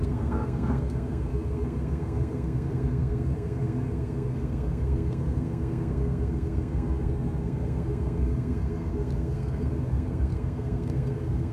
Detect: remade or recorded remade